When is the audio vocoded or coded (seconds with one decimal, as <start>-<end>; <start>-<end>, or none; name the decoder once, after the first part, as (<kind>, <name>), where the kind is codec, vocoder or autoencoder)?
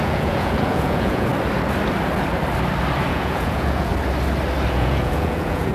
0.0-1.3 (vocoder, Vocos); 3.1-3.9; 4.7-5.7